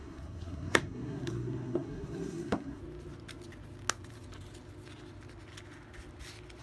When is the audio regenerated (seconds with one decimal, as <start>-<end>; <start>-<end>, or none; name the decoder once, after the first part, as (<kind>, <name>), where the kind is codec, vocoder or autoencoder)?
0.0-2.8 (codec, SNAC)